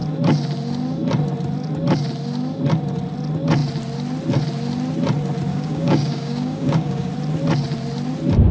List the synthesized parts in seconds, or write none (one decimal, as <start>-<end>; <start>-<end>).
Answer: 5.5-7.1